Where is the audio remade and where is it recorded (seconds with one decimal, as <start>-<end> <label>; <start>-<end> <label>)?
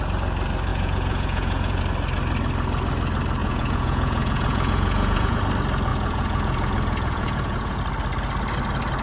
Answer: 0.0-0.7 recorded; 0.7-1.8 remade; 1.8-3.4 recorded; 3.4-5.4 remade; 5.4-5.9 recorded; 5.9-7.8 remade; 7.8-9.0 recorded